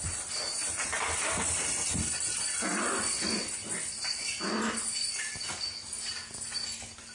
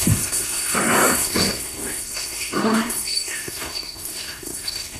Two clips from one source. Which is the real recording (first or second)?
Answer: first